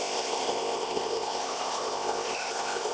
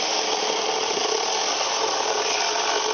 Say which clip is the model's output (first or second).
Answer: first